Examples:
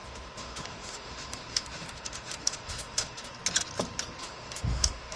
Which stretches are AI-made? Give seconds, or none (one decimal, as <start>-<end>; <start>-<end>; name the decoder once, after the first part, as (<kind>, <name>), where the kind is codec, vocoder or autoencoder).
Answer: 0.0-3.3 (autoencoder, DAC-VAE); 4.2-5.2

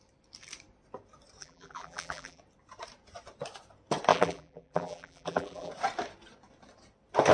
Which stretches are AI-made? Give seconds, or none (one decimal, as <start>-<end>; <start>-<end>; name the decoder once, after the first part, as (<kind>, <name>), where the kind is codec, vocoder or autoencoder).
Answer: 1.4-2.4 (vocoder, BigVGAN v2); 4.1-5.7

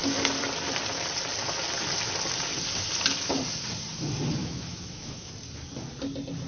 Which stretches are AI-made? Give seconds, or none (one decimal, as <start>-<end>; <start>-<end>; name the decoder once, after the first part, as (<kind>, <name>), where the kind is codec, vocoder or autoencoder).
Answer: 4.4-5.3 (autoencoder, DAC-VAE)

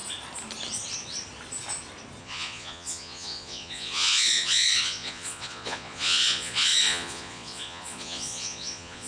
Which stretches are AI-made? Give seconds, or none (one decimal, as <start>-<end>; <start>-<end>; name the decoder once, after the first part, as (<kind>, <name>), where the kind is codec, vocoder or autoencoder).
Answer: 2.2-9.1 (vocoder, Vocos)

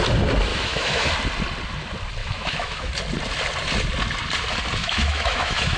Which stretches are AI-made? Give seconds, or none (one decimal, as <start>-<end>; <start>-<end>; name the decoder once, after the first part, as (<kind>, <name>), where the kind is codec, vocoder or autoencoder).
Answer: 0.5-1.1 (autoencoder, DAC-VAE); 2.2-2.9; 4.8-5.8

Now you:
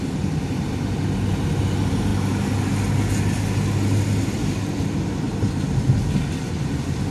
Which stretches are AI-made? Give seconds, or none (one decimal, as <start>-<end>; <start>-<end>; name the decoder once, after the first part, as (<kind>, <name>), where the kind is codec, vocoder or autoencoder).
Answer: none